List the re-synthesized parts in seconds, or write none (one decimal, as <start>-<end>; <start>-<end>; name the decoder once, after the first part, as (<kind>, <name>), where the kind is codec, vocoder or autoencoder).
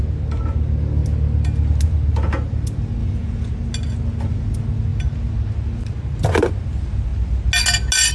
3.0-3.5 (vocoder, Vocos)